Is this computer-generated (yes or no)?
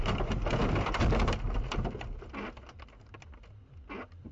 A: no